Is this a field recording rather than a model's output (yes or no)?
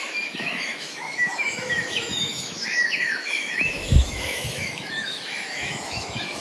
no